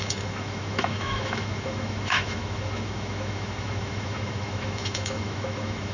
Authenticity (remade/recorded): remade